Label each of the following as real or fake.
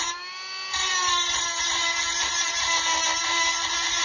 real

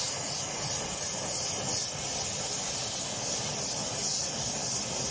real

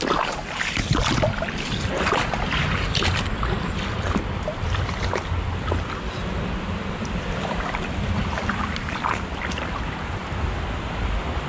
real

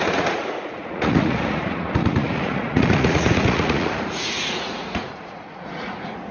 fake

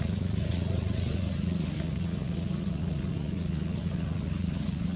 fake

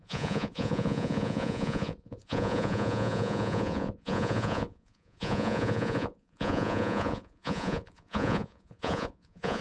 fake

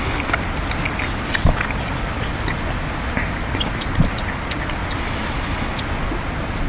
real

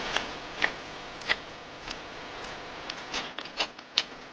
fake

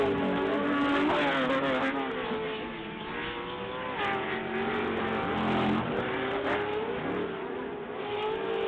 real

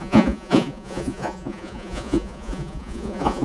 fake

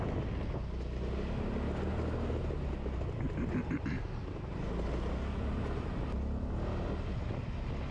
real